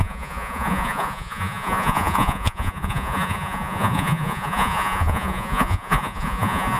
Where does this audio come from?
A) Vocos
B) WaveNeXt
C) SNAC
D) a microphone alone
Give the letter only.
A